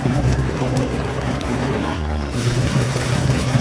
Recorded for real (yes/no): no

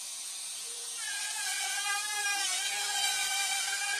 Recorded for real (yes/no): no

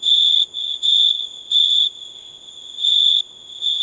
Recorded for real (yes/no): no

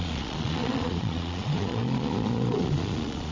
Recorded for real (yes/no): no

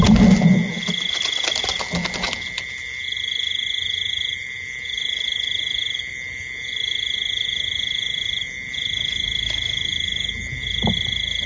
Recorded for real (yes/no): yes